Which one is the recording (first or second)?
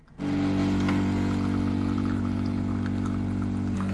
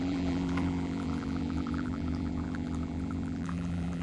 first